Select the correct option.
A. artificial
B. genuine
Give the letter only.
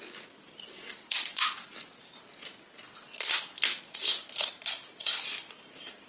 B